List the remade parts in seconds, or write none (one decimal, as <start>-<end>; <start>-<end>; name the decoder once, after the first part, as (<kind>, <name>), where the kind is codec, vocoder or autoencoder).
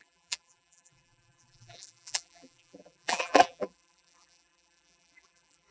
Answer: 0.0-5.7 (vocoder, BigVGAN v2)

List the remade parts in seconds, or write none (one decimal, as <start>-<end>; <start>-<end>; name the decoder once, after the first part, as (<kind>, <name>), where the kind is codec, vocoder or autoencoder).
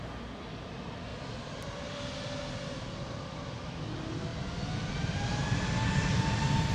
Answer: 1.1-3.9 (vocoder, BigVGAN v2)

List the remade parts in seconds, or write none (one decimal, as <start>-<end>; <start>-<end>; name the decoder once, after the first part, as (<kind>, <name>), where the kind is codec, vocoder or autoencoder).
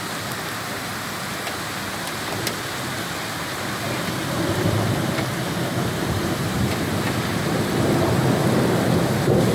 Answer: 5.7-7.6 (vocoder, BigVGAN v2)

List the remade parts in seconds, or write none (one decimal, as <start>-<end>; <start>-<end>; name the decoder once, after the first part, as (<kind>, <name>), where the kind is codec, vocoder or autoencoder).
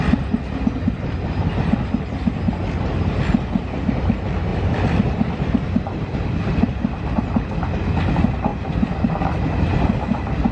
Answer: 4.5-7.3 (vocoder, BigVGAN v2); 8.5-9.6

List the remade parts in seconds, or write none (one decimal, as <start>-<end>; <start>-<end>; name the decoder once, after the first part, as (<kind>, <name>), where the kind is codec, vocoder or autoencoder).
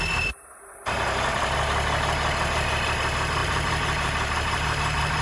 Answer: 3.4-5.2 (vocoder, BigVGAN v2)